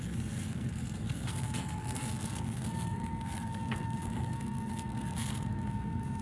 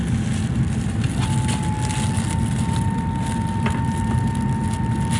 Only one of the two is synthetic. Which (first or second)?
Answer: first